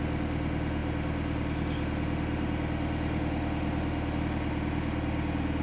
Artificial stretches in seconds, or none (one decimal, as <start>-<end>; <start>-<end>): none